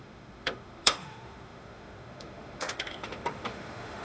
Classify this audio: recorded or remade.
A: remade